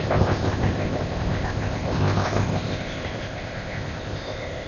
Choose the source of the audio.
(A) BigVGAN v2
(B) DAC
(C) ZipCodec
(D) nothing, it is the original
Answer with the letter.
C